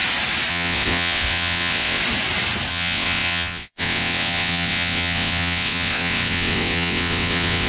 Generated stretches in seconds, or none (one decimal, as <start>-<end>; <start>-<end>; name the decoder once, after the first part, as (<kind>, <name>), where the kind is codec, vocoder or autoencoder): 0.5-2.0 (vocoder, WaveNeXt); 2.7-7.7